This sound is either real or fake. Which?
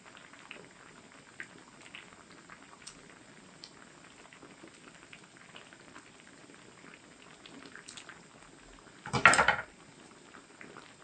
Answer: real